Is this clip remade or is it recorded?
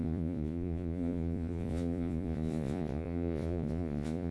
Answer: remade